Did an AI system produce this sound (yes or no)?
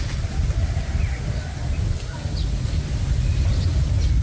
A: no